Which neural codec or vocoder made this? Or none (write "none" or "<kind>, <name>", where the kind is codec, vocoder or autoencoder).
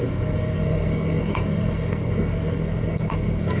codec, SNAC